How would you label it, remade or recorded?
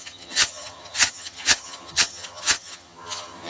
remade